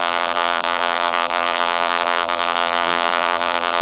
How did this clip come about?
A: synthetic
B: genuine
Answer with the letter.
A